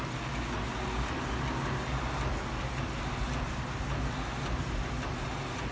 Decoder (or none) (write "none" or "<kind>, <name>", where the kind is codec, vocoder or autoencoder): none